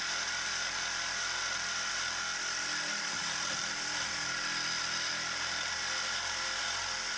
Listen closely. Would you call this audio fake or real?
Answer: real